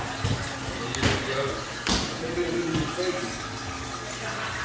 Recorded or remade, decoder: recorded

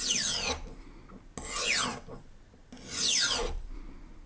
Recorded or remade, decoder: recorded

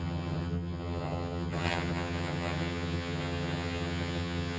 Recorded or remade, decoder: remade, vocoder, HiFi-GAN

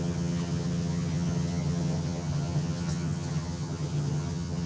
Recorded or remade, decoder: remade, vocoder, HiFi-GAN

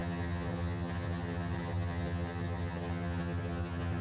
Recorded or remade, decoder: remade, vocoder, HiFi-GAN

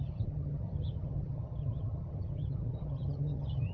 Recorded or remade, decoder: remade, vocoder, HiFi-GAN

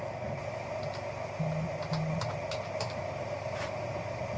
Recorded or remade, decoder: recorded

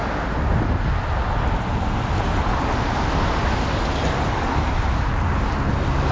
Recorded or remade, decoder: recorded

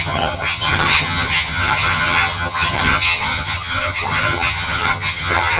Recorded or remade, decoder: remade, vocoder, HiFi-GAN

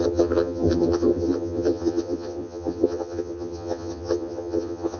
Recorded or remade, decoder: remade, vocoder, HiFi-GAN